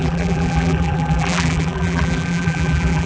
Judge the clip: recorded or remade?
remade